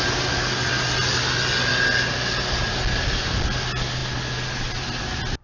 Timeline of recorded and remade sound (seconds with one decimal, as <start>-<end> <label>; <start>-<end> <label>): 0.0-5.4 recorded